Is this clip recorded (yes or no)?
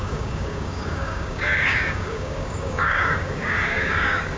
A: no